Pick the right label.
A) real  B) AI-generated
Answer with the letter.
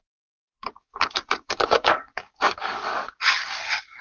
B